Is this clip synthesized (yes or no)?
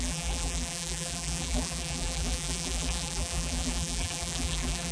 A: yes